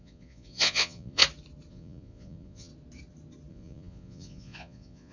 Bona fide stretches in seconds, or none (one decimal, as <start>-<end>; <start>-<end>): 1.2-1.7; 2.7-3.5